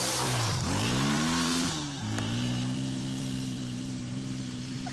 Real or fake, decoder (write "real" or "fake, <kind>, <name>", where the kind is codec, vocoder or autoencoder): fake, vocoder, BigVGAN v2